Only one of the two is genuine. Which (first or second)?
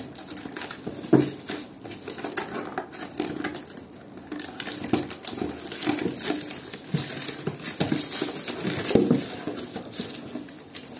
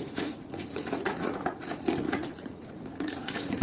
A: first